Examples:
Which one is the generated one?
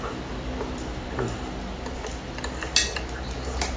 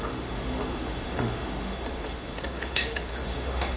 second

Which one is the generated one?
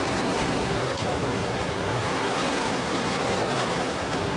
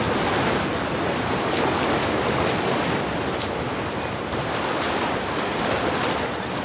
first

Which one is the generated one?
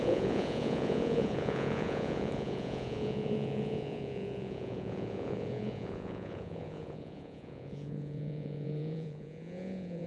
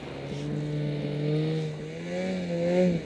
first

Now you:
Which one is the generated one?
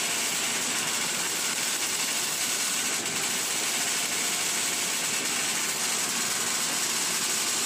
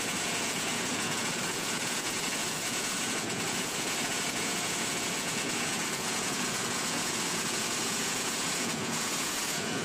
second